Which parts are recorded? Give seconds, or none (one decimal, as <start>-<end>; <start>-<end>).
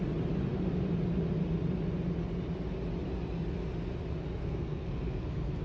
0.0-4.4